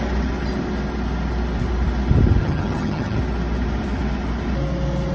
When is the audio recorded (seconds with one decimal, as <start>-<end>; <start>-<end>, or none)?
0.0-2.4; 3.2-5.1